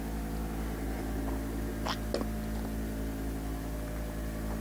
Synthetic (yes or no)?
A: no